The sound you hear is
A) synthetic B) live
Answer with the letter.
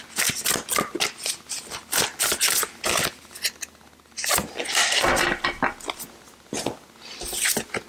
B